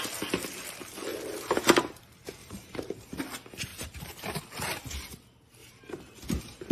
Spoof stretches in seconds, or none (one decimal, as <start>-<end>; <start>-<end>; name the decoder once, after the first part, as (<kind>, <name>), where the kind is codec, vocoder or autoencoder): 1.1-2.0 (vocoder, BigVGAN v2); 2.4-3.2; 3.7-4.4; 5.6-6.7